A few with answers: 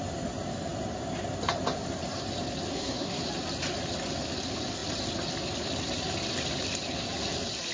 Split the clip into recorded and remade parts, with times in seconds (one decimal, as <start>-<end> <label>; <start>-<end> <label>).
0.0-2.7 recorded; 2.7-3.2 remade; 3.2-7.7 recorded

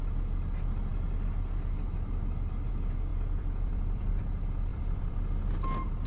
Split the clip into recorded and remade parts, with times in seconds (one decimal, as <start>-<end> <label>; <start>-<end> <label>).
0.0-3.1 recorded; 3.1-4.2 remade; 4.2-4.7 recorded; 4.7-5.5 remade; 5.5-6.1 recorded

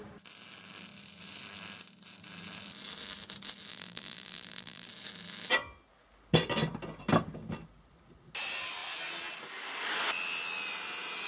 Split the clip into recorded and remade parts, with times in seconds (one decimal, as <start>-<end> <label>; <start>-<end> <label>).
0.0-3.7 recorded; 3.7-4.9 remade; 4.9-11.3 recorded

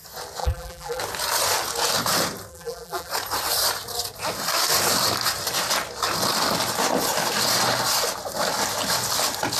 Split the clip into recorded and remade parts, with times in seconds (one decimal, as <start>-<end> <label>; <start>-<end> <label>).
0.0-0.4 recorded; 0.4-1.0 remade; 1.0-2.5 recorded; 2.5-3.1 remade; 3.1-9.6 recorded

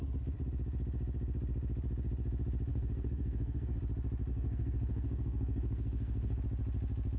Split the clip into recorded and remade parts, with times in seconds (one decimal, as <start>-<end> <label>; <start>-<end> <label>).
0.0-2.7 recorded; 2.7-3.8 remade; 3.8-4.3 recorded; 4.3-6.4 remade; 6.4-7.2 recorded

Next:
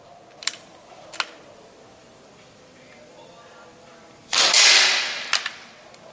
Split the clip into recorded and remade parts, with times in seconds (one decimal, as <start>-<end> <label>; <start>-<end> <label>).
0.0-2.0 recorded; 2.0-4.7 remade; 4.7-6.1 recorded

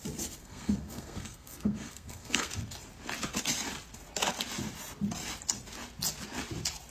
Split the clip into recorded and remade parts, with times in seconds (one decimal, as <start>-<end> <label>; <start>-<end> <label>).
0.0-0.4 recorded; 0.4-2.5 remade; 2.5-6.9 recorded